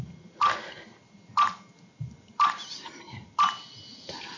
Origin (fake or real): real